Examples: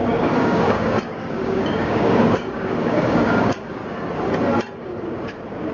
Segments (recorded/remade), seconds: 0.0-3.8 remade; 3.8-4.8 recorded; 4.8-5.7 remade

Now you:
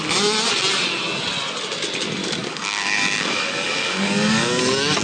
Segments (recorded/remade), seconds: 0.0-2.2 recorded; 2.2-4.6 remade; 4.6-5.0 recorded

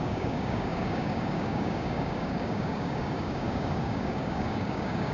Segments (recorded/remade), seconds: 0.0-5.1 remade